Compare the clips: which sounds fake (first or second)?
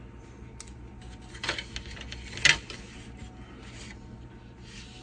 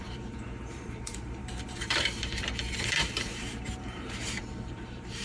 second